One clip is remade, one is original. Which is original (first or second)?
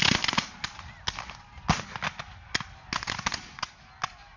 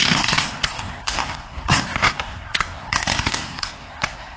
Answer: first